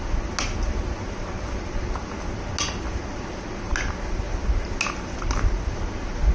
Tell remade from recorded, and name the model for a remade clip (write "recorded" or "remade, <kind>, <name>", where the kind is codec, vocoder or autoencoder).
recorded